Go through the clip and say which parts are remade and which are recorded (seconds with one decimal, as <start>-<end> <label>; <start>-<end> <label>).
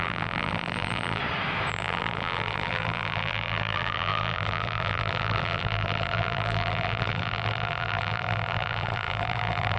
0.0-1.2 remade; 1.2-1.7 recorded; 1.7-9.8 remade